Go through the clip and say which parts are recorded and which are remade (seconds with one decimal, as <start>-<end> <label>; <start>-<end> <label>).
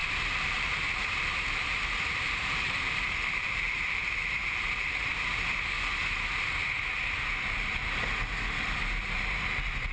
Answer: 0.0-4.0 remade; 4.0-4.4 recorded; 4.4-5.1 remade; 5.1-9.9 recorded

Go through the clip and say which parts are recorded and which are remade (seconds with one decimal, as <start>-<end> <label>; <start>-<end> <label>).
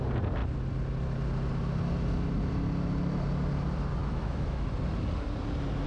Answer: 0.0-4.0 recorded; 4.0-4.7 remade; 4.7-5.9 recorded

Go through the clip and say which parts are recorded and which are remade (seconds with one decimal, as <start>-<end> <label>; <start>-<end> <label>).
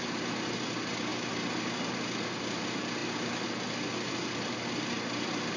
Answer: 0.0-5.6 recorded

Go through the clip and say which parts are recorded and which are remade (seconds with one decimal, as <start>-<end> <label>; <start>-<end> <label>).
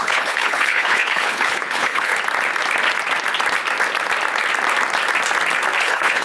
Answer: 0.0-2.1 remade; 2.1-5.8 recorded; 5.8-6.2 remade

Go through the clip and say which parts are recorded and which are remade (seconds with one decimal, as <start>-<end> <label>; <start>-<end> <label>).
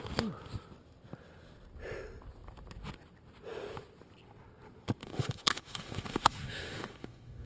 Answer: 0.0-5.0 recorded; 5.0-7.5 remade